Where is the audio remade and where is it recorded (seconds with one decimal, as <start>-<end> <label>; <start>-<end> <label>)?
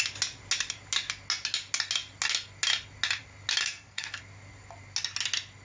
0.0-3.6 recorded; 3.6-4.2 remade; 4.2-5.6 recorded